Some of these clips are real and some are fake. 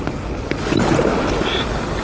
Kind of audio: real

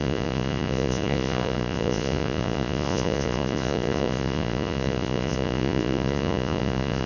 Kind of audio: fake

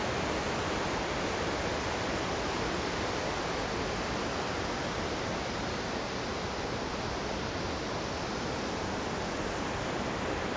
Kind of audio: real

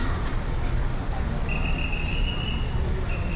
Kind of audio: real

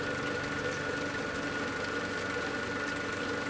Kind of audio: real